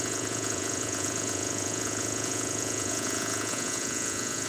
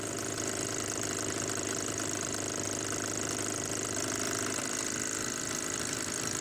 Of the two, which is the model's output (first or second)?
first